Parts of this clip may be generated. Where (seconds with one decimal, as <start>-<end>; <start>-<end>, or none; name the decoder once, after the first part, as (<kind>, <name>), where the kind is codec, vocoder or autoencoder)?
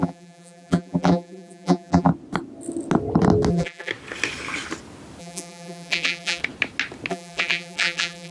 0.0-2.1 (vocoder, BigVGAN v2); 3.5-3.9; 5.2-6.4; 7.1-8.3